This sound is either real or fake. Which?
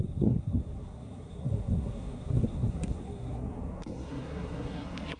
fake